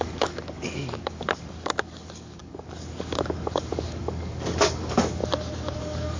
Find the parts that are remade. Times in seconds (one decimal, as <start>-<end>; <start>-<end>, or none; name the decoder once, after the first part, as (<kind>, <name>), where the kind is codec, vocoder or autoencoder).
0.0-5.2 (codec, DAC); 5.8-6.2